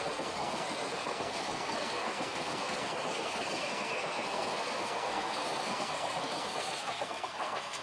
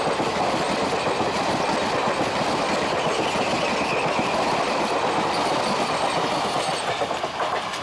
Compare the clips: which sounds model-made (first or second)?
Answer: first